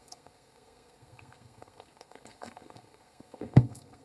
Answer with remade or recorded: remade